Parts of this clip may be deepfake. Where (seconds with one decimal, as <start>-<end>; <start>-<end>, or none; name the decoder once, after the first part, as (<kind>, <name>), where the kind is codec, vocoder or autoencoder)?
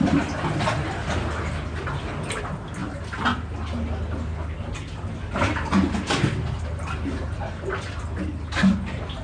none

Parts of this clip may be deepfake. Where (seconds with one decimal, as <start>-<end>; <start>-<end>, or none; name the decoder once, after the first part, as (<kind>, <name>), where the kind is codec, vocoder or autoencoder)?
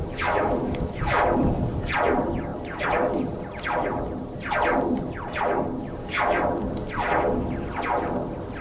0.0-1.2 (autoencoder, DAC-VAE); 5.8-6.4